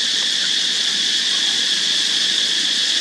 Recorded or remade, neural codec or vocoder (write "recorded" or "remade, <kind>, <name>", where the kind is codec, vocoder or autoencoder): remade, vocoder, Vocos